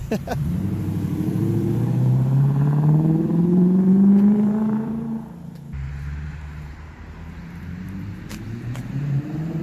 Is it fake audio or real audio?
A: fake